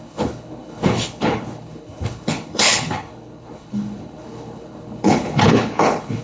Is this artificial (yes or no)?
yes